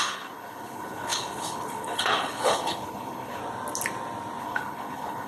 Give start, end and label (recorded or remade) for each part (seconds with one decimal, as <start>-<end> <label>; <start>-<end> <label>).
0.0-3.4 remade; 3.4-4.4 recorded; 4.4-5.3 remade